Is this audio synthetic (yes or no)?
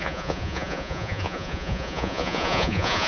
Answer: yes